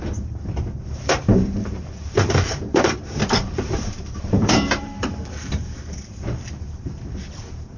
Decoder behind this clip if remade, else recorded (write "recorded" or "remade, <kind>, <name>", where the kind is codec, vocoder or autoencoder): remade, vocoder, BigVGAN v2